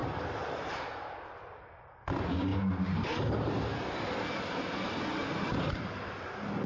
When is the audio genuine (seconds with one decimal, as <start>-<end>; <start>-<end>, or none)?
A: 0.0-6.7